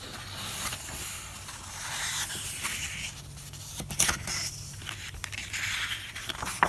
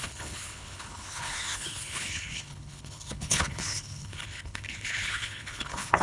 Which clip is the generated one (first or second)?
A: second